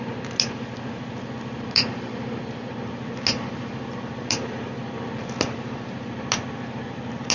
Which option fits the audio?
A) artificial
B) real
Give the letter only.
B